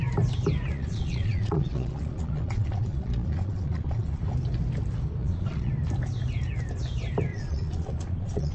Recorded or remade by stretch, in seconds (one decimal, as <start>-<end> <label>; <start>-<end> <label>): 0.0-0.7 recorded; 0.7-4.2 remade; 4.2-5.2 recorded; 5.2-5.7 remade; 5.7-7.3 recorded; 7.3-8.5 remade